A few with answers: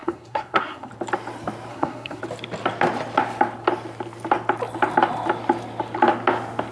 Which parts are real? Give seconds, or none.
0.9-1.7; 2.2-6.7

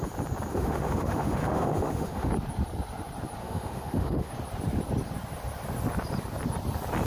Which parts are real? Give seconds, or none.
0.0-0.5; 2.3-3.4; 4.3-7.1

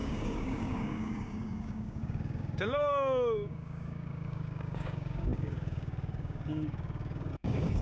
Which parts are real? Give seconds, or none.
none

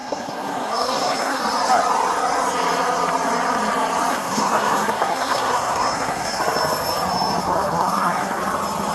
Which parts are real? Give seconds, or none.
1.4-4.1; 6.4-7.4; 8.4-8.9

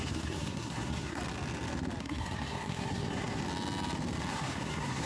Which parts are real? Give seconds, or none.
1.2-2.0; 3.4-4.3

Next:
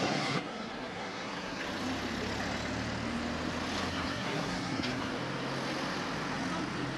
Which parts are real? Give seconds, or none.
1.6-3.9; 5.1-7.0

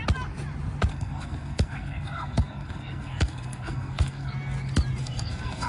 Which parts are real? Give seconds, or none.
0.0-0.9; 4.3-5.0

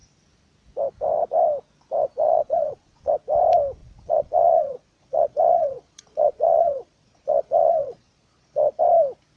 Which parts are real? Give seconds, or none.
0.0-2.0; 3.1-3.8; 8.8-9.4